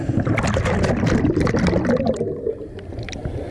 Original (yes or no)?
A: yes